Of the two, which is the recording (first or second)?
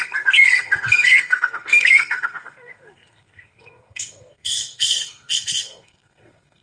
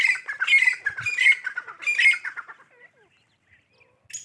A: second